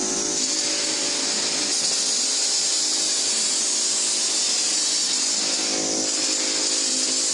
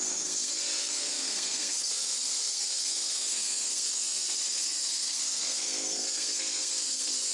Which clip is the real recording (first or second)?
first